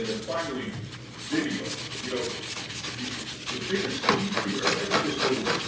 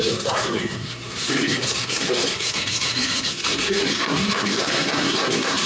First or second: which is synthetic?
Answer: second